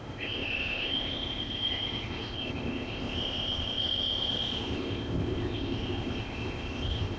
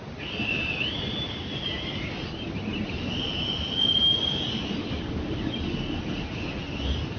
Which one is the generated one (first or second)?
first